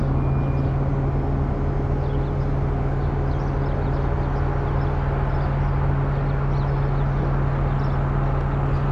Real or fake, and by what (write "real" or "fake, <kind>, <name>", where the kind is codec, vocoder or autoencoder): real